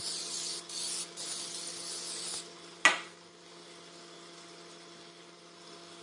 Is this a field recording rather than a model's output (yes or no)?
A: yes